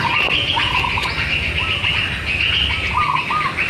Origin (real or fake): real